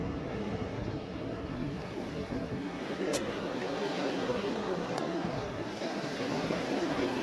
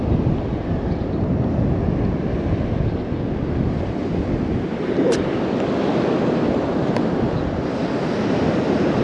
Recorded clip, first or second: second